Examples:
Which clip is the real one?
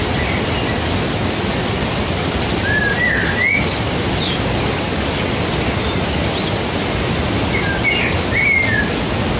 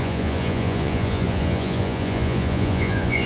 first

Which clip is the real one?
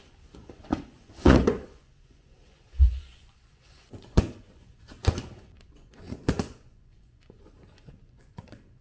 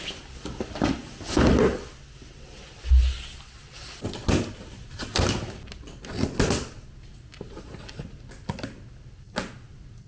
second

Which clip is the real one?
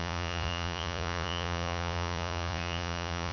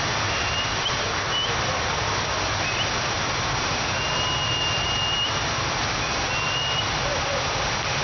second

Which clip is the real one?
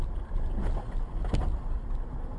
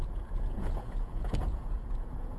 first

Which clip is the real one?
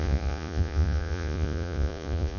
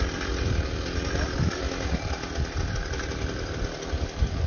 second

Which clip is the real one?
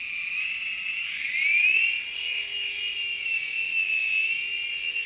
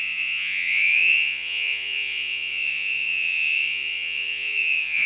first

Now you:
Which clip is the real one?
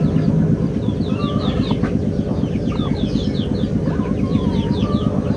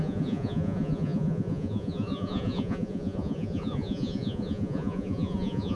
first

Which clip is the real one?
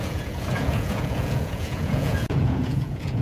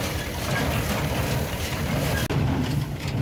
second